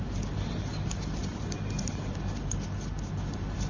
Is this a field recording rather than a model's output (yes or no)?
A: yes